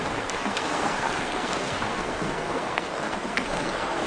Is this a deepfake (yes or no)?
yes